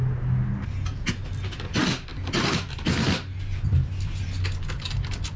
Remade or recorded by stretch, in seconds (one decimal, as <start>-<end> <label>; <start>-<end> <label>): 0.0-5.4 recorded

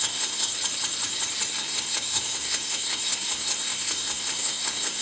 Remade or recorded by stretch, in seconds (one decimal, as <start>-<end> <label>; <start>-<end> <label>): 0.0-0.5 remade; 0.5-1.5 recorded; 1.5-5.0 remade

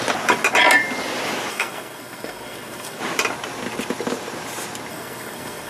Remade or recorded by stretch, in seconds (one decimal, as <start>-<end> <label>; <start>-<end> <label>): 0.0-1.5 recorded; 1.5-3.0 remade; 3.0-4.9 recorded; 4.9-5.7 remade

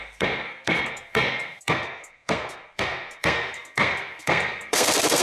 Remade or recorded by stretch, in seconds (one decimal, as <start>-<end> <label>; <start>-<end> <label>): 0.0-5.2 remade

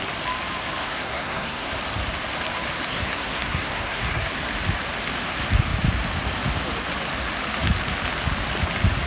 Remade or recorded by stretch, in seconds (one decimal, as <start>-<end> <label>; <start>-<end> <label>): 0.0-0.8 recorded; 0.8-1.7 remade; 1.7-2.9 recorded; 2.9-4.3 remade; 4.3-9.1 recorded